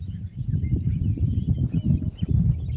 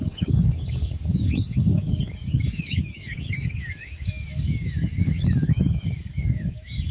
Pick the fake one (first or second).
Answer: second